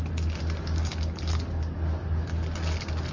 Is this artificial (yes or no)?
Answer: no